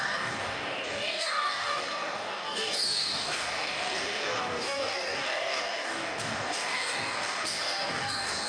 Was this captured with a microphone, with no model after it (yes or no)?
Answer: no